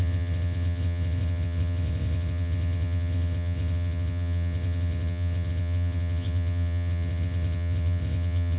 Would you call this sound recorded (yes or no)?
no